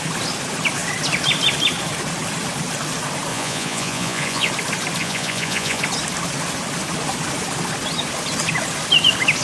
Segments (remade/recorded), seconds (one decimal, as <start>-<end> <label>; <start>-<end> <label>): 0.0-3.3 recorded; 3.3-4.5 remade; 4.5-5.0 recorded; 5.0-5.8 remade; 5.8-9.4 recorded